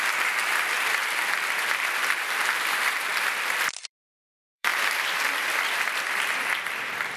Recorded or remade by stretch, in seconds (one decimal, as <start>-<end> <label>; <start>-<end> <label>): 0.0-3.1 remade; 3.1-3.7 recorded; 3.7-7.2 remade